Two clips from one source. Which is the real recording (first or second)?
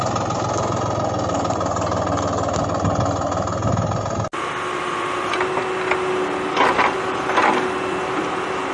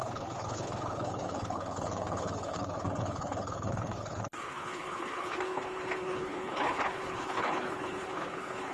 first